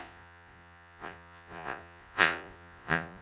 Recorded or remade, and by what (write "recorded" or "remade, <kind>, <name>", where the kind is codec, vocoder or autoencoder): remade, vocoder, Vocos